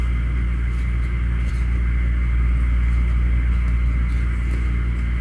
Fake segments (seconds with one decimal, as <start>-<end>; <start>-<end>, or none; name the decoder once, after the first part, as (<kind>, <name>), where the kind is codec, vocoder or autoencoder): none